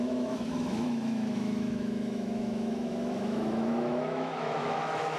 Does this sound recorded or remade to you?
remade